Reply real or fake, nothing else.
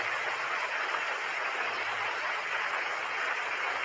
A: real